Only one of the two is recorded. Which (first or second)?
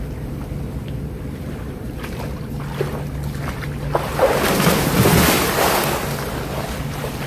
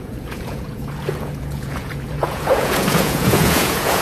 first